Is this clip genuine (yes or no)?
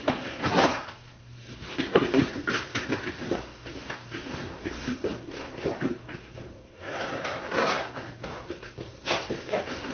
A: no